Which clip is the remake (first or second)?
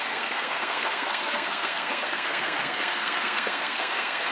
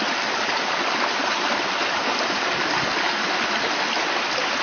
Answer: first